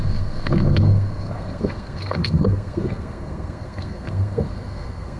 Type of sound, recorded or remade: remade